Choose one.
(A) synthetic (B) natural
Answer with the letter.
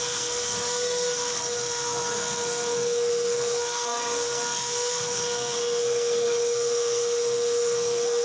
A